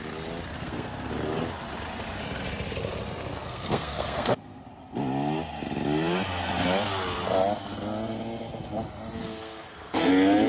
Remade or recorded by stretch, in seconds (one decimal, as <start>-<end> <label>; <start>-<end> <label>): 0.0-0.5 recorded; 0.5-1.1 remade; 1.1-3.3 recorded; 3.3-4.6 remade; 4.6-9.2 recorded; 9.2-10.1 remade; 10.1-10.5 recorded